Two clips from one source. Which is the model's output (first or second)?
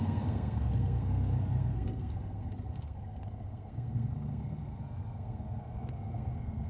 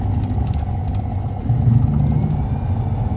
first